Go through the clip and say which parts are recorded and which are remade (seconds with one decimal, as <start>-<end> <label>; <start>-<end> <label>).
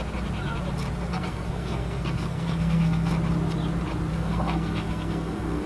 0.0-1.1 recorded; 1.1-3.1 remade; 3.1-4.1 recorded; 4.1-5.7 remade